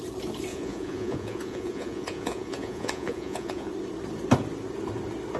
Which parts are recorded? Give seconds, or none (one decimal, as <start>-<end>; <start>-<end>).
0.0-0.5; 3.7-5.4

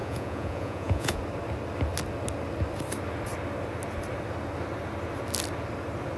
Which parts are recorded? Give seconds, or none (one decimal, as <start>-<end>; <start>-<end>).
1.2-6.2

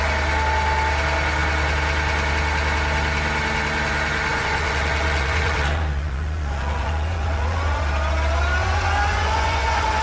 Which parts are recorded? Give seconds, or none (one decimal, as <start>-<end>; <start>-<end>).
0.0-4.3; 7.8-8.6

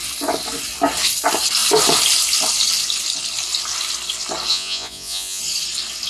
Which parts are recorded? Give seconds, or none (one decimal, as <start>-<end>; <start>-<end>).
0.0-4.5; 5.4-6.1

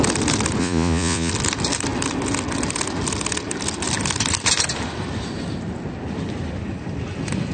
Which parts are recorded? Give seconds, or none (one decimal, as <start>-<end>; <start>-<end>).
0.0-0.6; 1.3-7.5

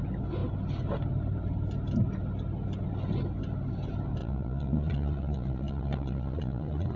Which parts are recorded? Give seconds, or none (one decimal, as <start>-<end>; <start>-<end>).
0.0-4.2